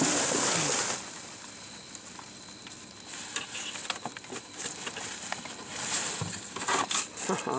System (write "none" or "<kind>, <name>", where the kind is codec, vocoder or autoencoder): none